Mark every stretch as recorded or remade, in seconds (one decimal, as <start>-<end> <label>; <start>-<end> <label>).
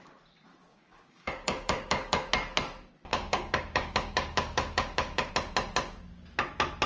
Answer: 0.0-0.7 recorded; 0.7-2.3 remade; 2.3-3.1 recorded; 3.1-5.3 remade; 5.3-6.9 recorded